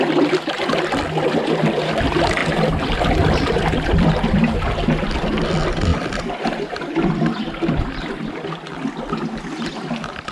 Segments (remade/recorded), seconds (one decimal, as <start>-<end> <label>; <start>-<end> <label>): 0.0-2.4 recorded; 2.4-3.1 remade; 3.1-5.9 recorded; 5.9-8.3 remade; 8.3-10.3 recorded